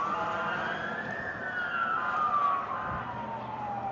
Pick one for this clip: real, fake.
real